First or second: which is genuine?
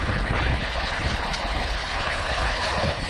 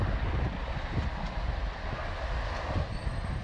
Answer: second